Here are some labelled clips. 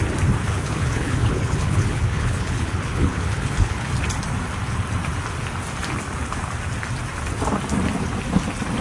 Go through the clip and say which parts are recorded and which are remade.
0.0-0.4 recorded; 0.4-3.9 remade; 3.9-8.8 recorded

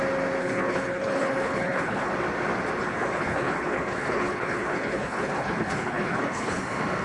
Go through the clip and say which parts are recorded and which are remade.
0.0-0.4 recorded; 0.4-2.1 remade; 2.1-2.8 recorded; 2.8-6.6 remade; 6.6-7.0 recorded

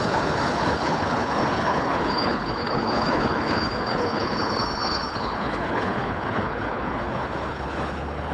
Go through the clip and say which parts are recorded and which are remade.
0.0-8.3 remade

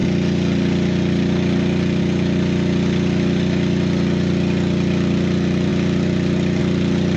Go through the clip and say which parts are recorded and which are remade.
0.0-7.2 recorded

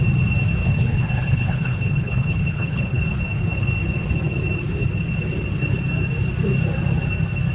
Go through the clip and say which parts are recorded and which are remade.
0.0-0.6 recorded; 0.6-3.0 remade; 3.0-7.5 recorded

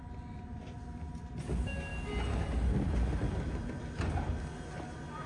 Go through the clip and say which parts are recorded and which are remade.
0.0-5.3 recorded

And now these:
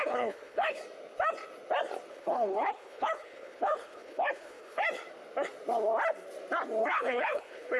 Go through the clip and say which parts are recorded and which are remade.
0.0-0.8 remade; 0.8-2.1 recorded; 2.1-4.8 remade; 4.8-6.8 recorded; 6.8-7.8 remade